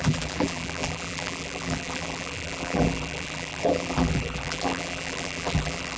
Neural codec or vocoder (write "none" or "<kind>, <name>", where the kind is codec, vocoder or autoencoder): vocoder, BigVGAN v2